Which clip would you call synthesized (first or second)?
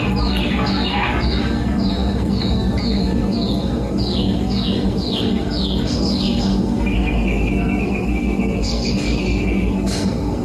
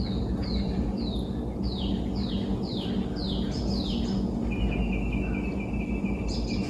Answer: first